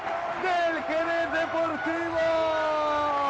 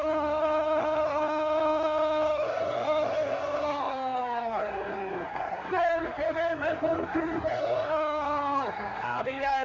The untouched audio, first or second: first